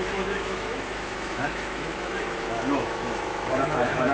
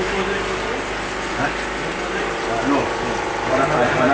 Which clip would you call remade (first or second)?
first